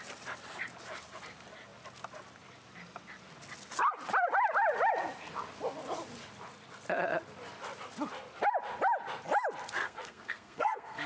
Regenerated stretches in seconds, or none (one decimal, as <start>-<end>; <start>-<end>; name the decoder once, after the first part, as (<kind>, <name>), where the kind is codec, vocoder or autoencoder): 9.8-11.1 (codec, SNAC)